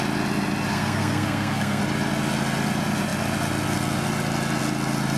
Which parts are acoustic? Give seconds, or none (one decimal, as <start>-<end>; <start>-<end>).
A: 0.0-0.7; 1.8-5.2